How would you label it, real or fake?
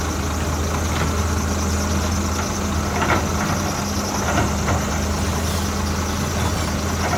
real